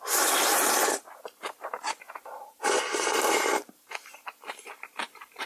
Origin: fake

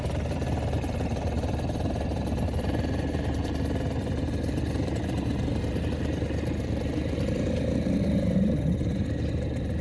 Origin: fake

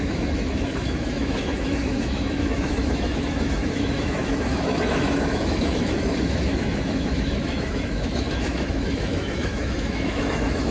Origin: fake